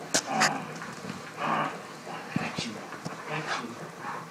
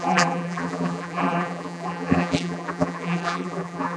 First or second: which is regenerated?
second